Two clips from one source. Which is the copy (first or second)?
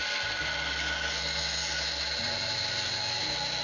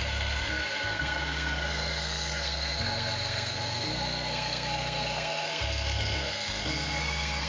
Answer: second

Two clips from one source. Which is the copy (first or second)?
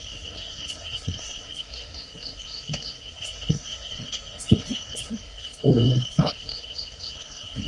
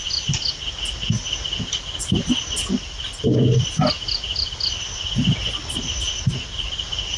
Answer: first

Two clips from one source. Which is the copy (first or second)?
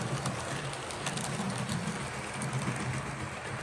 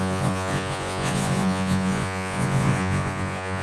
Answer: second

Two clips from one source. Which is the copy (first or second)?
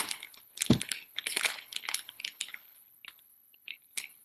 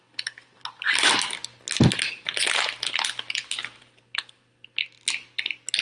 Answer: first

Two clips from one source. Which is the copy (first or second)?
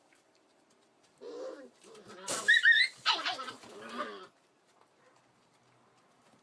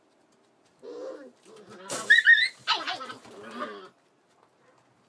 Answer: first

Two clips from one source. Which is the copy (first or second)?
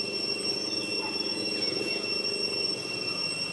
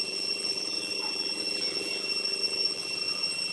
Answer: second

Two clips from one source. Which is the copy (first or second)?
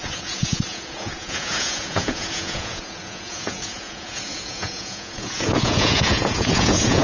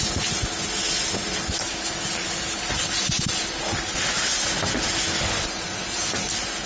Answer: first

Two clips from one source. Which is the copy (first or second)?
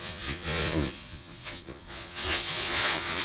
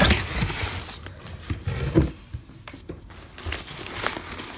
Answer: first